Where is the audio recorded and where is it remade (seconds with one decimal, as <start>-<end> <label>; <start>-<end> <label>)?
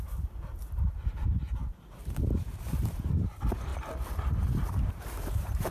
0.0-3.7 remade; 3.7-4.9 recorded; 4.9-5.7 remade